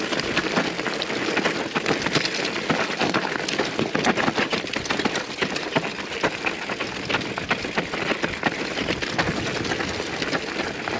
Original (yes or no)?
yes